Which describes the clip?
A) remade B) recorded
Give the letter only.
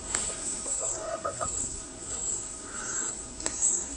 A